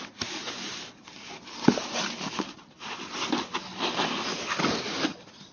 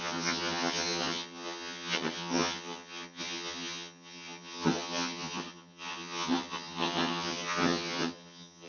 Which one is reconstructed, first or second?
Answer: second